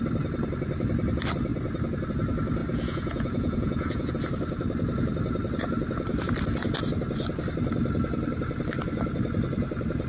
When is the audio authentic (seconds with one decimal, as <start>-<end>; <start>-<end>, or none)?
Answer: 0.0-2.6; 4.1-10.1